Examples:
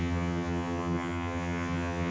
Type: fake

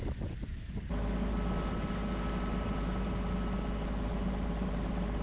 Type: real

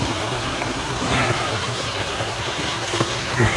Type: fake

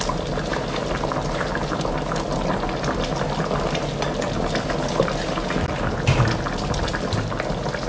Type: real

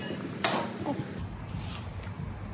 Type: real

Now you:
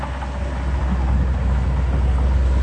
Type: real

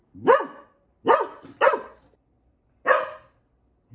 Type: real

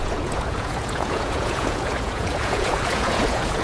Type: fake